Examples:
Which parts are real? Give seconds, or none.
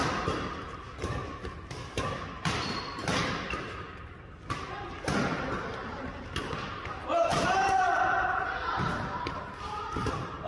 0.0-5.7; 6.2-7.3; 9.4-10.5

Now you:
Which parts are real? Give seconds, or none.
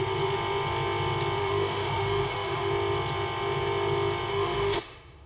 0.0-1.4; 2.7-4.3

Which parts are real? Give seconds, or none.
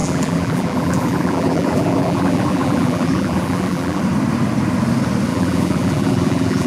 4.0-5.3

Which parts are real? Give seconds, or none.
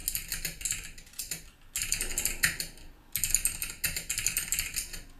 0.0-5.2